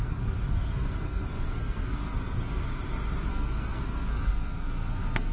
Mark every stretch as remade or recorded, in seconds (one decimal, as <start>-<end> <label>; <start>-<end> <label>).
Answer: 0.0-2.6 remade; 2.6-3.3 recorded; 3.3-5.3 remade